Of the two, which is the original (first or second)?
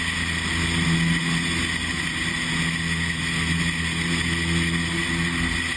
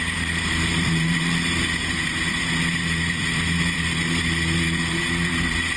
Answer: first